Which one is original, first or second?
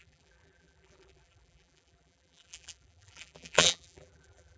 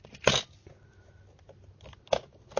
second